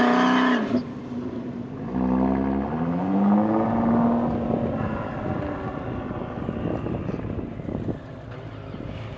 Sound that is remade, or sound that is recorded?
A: recorded